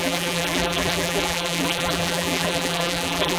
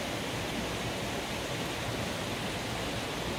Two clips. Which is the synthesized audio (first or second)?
first